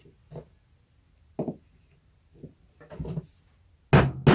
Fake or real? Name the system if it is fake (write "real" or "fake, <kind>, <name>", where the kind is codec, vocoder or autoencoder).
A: real